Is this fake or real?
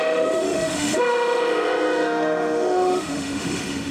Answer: fake